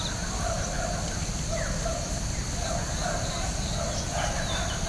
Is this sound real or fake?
real